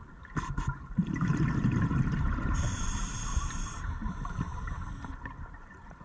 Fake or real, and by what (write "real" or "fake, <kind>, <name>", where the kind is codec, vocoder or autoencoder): fake, vocoder, BigVGAN v2